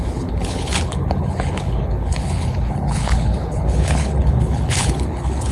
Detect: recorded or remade remade